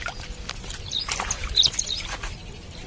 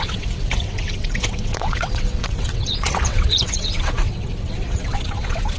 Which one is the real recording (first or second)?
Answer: first